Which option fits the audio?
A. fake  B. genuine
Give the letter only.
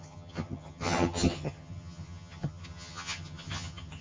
A